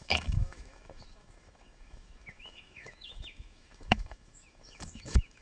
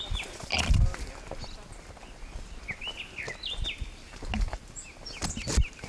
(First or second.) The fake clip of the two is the first